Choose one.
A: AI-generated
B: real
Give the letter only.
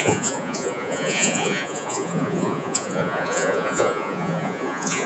A